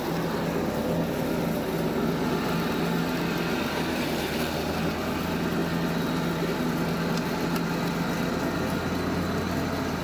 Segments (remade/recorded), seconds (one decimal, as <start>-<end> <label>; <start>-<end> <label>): 0.0-10.0 recorded